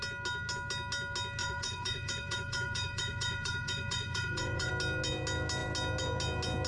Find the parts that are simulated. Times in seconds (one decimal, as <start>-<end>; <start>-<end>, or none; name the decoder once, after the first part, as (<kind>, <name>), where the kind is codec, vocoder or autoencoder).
1.4-4.7 (vocoder, Vocos)

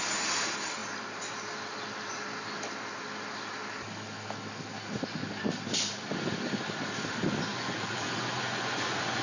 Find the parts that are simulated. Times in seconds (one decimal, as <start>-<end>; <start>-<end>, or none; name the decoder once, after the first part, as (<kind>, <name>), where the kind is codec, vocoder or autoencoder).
7.5-9.2 (vocoder, Vocos)

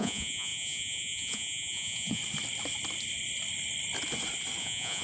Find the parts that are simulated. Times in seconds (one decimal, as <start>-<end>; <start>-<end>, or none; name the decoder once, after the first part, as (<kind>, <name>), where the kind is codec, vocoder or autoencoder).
0.0-2.2 (vocoder, Vocos); 4.6-5.0

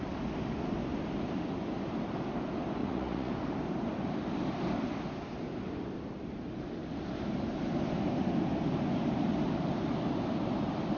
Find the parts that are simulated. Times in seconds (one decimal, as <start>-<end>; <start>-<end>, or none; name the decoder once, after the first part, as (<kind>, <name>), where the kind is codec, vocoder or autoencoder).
2.8-3.3 (vocoder, Vocos)

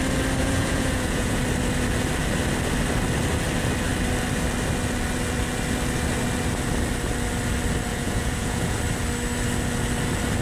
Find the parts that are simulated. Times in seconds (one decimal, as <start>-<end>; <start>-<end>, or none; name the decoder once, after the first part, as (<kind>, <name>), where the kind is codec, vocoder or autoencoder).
0.4-1.4 (vocoder, Vocos); 7.9-8.8